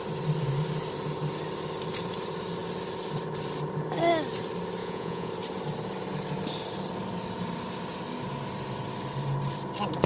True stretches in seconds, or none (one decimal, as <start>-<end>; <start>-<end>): 0.0-4.8; 5.3-10.1